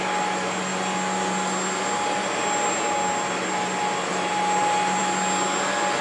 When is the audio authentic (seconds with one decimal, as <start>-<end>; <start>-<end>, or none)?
0.0-6.0